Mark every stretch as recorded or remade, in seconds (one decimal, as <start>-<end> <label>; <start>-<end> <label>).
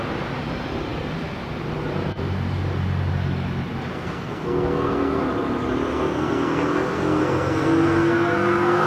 0.0-3.9 recorded; 3.9-5.2 remade; 5.2-5.9 recorded; 5.9-8.9 remade